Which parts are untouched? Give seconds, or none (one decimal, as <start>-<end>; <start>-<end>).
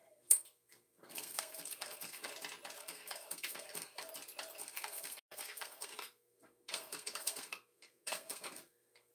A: 2.3-2.8; 4.1-4.6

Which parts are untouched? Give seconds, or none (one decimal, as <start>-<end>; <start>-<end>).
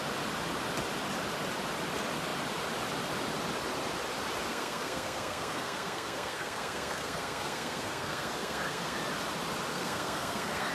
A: 0.0-4.5; 9.0-9.7